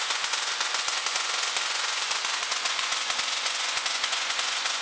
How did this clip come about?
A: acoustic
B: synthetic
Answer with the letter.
B